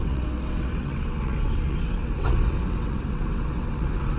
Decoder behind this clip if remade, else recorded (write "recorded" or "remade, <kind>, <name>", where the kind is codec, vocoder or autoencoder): remade, vocoder, WaveNeXt